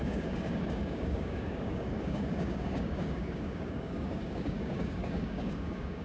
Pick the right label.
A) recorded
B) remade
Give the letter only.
B